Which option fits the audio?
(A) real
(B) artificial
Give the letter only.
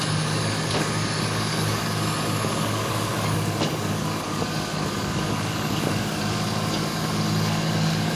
B